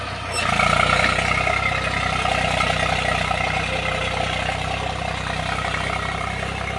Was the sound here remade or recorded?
recorded